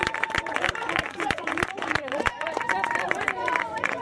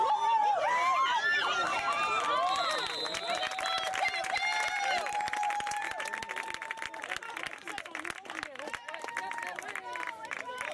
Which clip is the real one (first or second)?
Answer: second